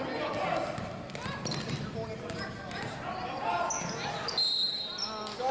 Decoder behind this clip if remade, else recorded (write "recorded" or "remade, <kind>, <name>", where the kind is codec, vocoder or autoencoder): recorded